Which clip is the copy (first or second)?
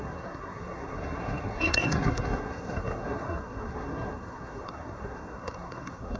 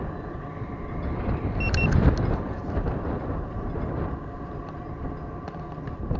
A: first